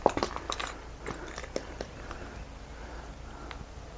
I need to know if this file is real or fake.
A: real